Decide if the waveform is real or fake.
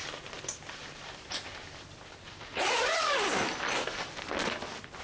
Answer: real